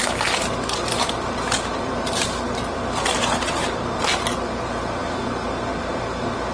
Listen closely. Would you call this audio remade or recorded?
recorded